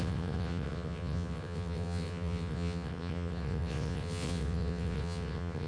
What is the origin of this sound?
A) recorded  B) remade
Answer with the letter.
B